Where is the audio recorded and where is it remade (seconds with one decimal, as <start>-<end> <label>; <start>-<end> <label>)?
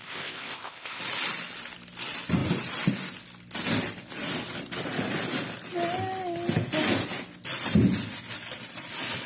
0.0-1.0 remade; 1.0-9.3 recorded